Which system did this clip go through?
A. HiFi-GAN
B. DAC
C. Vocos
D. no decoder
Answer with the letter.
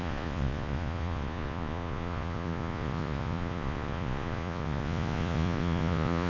C